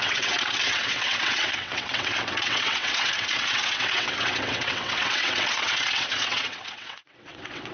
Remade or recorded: remade